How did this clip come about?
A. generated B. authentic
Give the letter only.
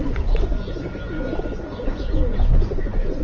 A